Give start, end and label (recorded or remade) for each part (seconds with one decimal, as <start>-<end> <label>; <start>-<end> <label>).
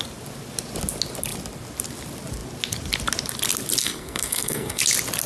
0.0-3.8 recorded; 3.8-4.8 remade; 4.8-5.3 recorded